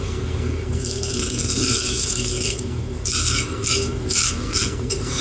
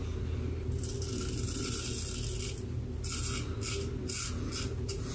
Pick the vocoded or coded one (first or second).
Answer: first